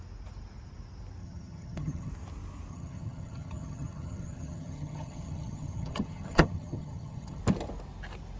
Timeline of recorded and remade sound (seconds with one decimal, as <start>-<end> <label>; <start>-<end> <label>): 0.0-1.2 recorded; 1.2-2.1 remade; 2.1-2.7 recorded; 2.7-7.4 remade; 7.4-8.4 recorded